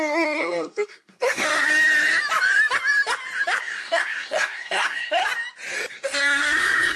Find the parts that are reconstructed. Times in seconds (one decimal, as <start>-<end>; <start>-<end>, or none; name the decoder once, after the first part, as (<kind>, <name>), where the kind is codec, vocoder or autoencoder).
0.0-1.7 (codec, SNAC); 3.6-5.2; 5.9-7.0